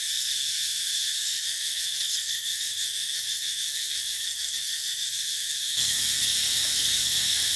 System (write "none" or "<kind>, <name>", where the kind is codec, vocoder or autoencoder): codec, SNAC